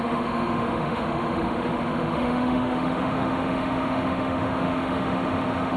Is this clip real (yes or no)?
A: no